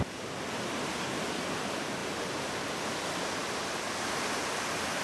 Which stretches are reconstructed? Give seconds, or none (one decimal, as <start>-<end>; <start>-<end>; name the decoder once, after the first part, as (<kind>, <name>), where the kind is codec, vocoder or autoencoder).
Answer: none